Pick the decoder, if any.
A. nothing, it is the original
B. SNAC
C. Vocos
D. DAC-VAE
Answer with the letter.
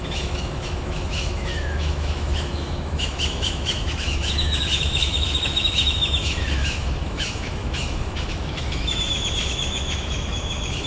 D